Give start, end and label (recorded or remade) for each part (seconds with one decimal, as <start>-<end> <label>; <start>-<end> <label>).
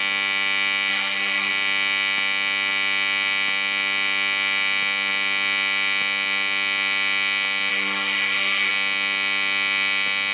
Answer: 0.0-0.9 recorded; 0.9-1.5 remade; 1.5-7.7 recorded; 7.7-8.7 remade; 8.7-10.3 recorded